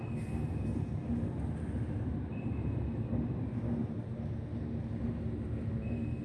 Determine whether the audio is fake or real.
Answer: real